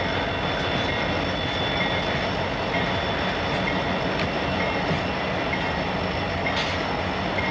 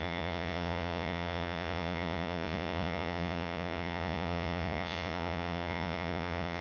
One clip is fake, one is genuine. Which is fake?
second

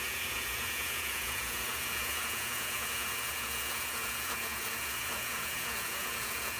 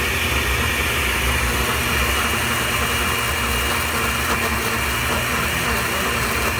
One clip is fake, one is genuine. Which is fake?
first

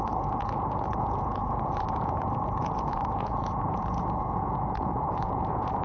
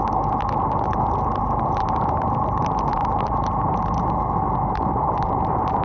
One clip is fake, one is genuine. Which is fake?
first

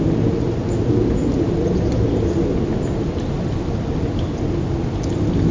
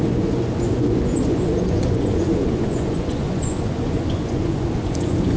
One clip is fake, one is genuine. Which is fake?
second